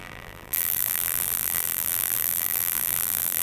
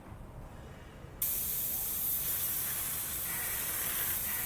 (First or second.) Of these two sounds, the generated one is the first